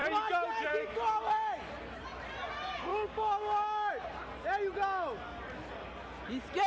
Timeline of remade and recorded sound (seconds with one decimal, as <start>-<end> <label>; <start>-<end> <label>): 0.0-2.9 recorded; 2.9-3.9 remade; 3.9-6.7 recorded

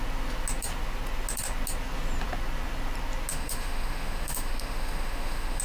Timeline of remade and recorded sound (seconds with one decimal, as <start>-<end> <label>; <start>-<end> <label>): 0.0-3.3 recorded; 3.3-5.6 remade

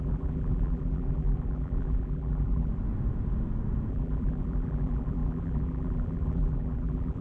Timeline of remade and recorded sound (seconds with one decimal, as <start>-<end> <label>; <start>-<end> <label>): 0.0-2.7 remade; 2.7-3.9 recorded; 3.9-7.2 remade

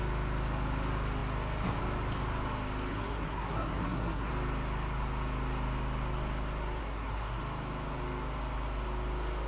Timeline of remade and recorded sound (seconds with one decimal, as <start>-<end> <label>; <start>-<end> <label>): 0.0-2.9 recorded; 2.9-4.3 remade; 4.3-6.8 recorded; 6.8-7.4 remade; 7.4-9.5 recorded

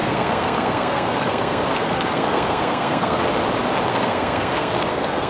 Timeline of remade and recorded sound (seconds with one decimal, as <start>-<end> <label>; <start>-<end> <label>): 0.0-3.2 remade; 3.2-3.9 recorded; 3.9-5.3 remade

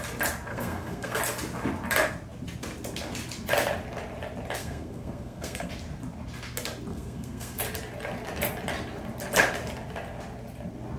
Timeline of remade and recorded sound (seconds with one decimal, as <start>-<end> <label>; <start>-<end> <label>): 0.0-0.5 recorded; 0.5-1.2 remade; 1.2-4.6 recorded; 4.6-5.7 remade; 5.7-6.9 recorded; 6.9-7.6 remade; 7.6-11.0 recorded